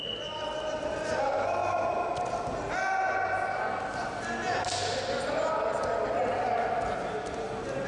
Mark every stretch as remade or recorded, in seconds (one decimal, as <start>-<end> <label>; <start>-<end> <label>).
0.0-7.9 recorded

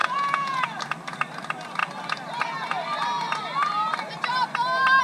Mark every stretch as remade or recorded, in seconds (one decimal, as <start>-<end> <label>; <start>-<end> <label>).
0.0-0.8 remade; 0.8-5.0 recorded

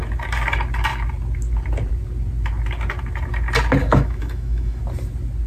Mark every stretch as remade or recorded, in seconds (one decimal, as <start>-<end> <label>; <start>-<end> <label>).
0.0-3.8 recorded; 3.8-4.8 remade; 4.8-5.5 recorded

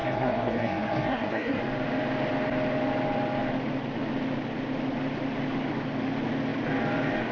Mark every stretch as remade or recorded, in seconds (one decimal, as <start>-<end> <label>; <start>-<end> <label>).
0.0-1.6 remade; 1.6-7.3 recorded

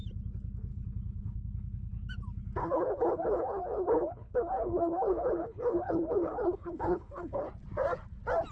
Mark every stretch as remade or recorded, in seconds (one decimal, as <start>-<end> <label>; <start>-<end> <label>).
0.0-0.7 recorded; 0.7-2.1 remade; 2.1-2.6 recorded; 2.6-7.5 remade; 7.5-8.5 recorded

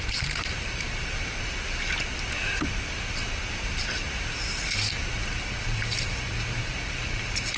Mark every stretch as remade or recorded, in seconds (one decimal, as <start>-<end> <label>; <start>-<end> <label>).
0.0-1.1 remade; 1.1-5.4 recorded; 5.4-7.6 remade

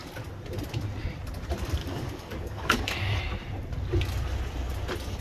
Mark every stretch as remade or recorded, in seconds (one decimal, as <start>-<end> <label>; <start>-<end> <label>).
0.0-1.8 recorded; 1.8-3.2 remade; 3.2-5.2 recorded